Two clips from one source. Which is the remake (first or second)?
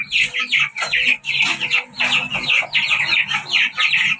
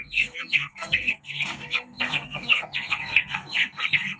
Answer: second